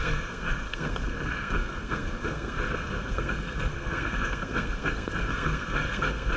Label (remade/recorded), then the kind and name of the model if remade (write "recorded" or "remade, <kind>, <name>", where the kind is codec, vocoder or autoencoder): remade, codec, SNAC